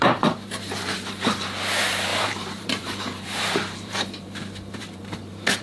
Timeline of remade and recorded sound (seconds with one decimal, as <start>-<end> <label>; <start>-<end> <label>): 0.0-5.6 remade